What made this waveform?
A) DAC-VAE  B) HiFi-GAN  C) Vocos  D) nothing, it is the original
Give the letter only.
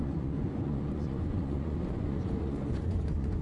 C